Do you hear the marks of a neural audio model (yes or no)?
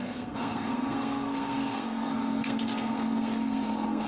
yes